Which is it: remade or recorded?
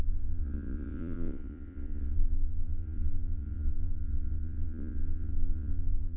remade